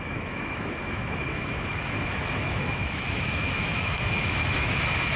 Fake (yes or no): yes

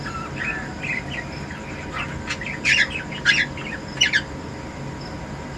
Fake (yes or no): no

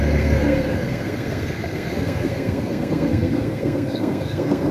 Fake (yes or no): yes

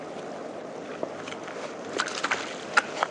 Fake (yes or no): no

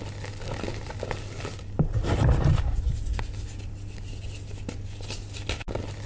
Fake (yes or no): no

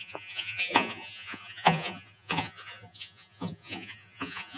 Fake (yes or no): yes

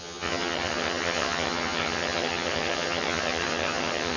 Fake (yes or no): yes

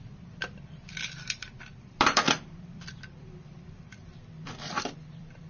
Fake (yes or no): yes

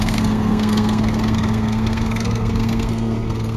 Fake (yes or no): yes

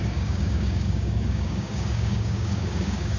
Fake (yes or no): yes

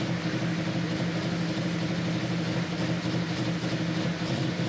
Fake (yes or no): no